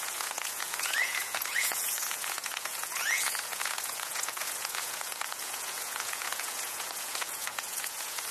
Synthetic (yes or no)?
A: yes